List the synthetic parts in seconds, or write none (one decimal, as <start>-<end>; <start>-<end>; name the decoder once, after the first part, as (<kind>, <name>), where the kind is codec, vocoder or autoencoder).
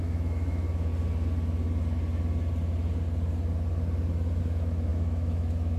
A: 0.0-0.9 (autoencoder, DAC-VAE); 4.4-5.8